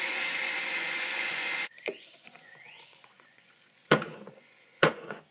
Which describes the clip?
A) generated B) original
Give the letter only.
A